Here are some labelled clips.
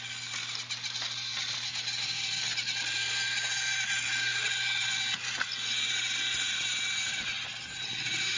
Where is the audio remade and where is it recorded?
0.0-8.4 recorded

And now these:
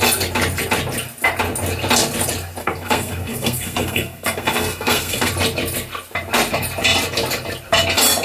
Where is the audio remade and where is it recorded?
0.0-2.6 recorded; 2.6-5.3 remade; 5.3-8.2 recorded